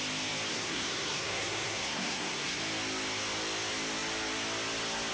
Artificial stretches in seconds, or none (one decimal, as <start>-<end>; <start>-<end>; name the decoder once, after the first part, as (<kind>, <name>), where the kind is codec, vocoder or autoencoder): 0.5-2.6 (codec, SNAC)